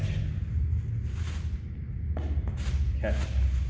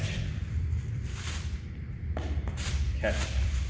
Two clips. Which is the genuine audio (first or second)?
first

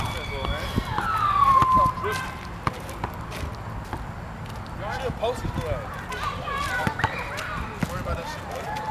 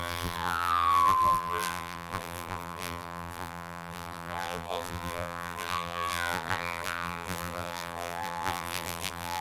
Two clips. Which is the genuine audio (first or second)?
first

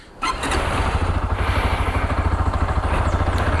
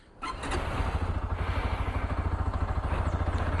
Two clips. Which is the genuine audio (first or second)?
second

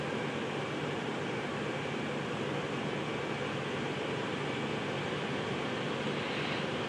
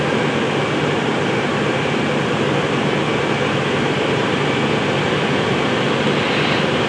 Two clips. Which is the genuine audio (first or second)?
first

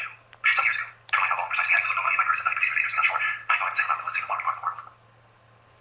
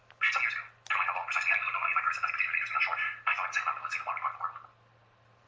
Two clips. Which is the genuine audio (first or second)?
second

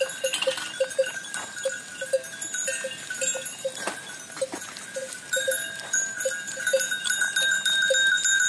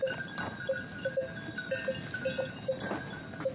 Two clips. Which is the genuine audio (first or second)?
second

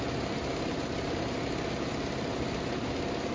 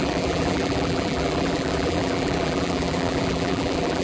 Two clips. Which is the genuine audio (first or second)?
first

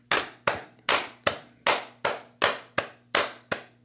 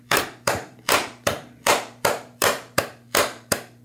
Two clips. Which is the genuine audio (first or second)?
first